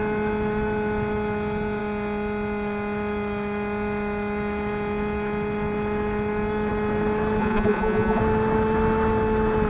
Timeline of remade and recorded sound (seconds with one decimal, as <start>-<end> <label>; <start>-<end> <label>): 0.0-7.4 recorded; 7.4-8.2 remade; 8.2-9.7 recorded